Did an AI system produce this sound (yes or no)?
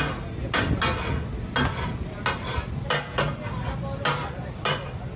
no